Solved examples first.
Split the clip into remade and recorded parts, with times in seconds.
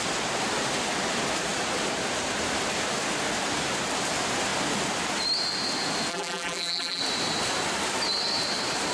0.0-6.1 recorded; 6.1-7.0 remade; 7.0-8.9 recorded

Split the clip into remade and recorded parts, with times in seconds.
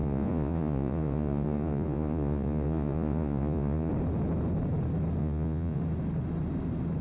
0.0-3.9 remade; 3.9-5.2 recorded; 5.2-5.8 remade; 5.8-7.0 recorded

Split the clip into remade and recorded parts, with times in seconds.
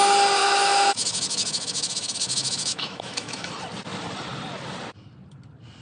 0.0-0.4 recorded; 0.4-3.5 remade; 3.5-5.8 recorded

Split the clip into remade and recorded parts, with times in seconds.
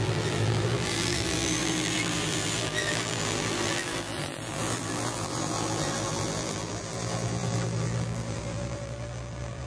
0.0-9.7 remade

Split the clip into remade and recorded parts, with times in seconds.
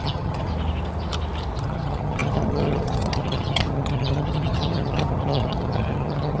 0.0-0.5 remade; 0.5-1.6 recorded; 1.6-6.4 remade